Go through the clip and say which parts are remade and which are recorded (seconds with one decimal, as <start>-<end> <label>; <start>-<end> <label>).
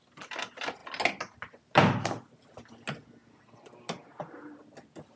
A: 0.0-5.2 recorded